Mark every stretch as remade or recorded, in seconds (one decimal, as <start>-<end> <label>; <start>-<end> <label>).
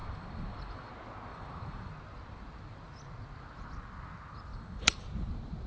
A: 0.0-0.9 remade; 0.9-1.3 recorded; 1.3-1.9 remade; 1.9-4.5 recorded; 4.5-5.0 remade; 5.0-5.7 recorded